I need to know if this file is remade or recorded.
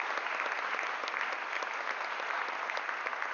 recorded